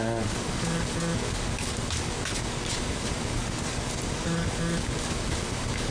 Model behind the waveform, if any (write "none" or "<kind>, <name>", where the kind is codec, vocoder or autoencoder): codec, DAC